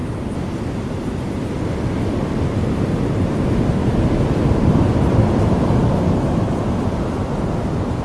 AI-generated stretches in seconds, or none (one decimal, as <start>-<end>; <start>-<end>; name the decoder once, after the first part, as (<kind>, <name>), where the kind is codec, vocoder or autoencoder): 3.8-6.0 (vocoder, BigVGAN v2)